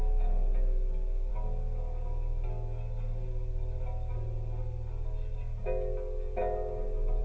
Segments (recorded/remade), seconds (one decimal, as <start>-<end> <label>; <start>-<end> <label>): 0.0-7.2 recorded